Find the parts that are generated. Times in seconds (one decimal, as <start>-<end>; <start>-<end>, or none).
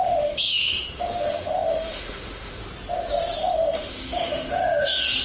0.0-2.6; 3.4-5.2